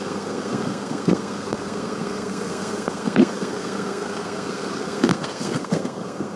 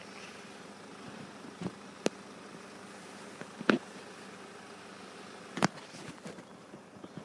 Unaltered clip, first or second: second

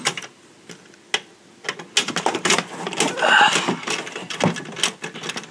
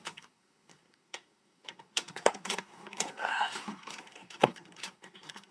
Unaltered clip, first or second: first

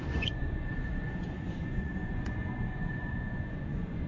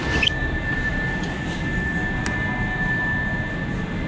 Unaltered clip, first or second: second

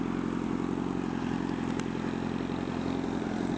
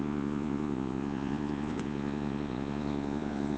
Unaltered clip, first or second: first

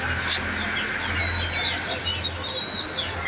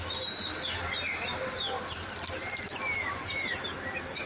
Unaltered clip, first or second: first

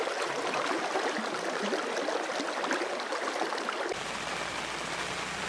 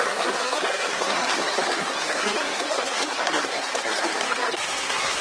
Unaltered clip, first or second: first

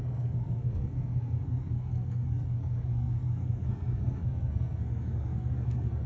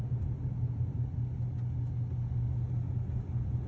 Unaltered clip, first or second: second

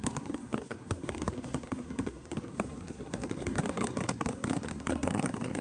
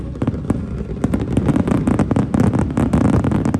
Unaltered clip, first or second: second